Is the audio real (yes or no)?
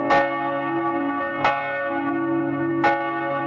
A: yes